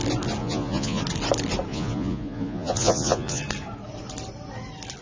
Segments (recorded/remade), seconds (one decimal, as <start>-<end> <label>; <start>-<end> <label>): 0.0-0.4 recorded; 0.4-1.0 remade; 1.0-1.7 recorded; 1.7-3.4 remade; 3.4-5.0 recorded